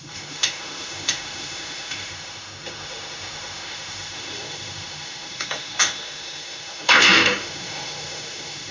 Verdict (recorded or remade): remade